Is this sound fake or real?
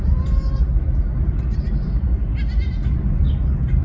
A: real